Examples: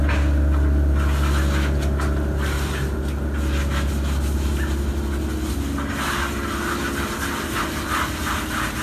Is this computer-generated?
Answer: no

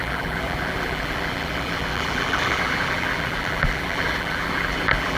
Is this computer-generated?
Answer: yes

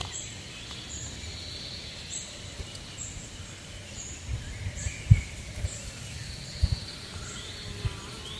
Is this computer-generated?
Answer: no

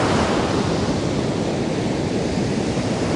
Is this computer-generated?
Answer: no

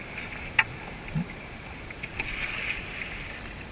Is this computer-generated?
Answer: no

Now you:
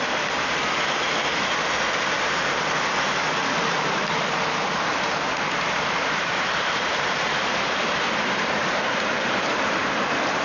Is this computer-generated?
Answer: yes